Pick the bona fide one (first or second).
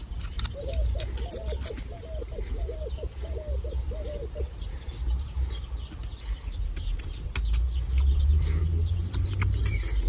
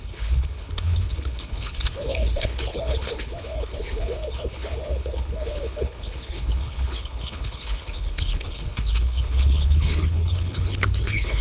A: first